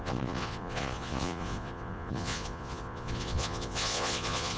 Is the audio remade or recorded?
remade